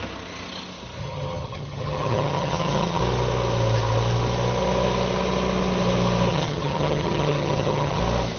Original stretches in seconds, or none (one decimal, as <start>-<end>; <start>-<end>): 0.0-1.0; 3.0-6.3; 8.0-8.4